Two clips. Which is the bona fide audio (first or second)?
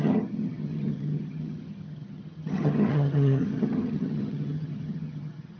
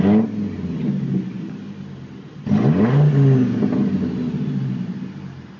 second